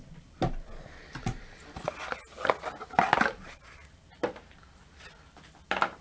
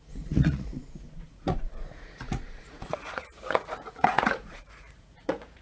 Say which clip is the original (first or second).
first